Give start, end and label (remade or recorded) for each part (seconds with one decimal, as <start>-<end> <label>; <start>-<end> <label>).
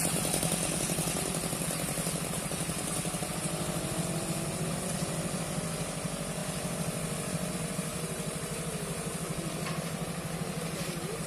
0.0-7.9 recorded; 7.9-8.7 remade; 8.7-11.3 recorded